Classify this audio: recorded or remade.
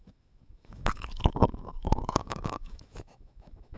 remade